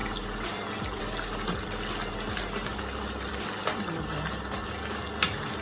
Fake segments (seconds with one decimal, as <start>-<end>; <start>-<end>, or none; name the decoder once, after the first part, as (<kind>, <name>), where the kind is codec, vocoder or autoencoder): none